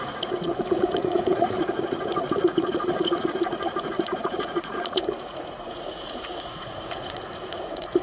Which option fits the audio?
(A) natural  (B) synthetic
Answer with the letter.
B